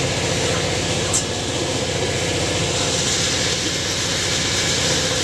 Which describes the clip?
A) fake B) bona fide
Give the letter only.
B